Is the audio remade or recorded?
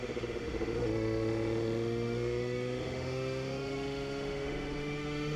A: remade